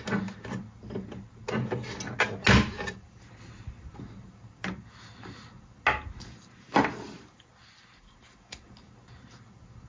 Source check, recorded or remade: recorded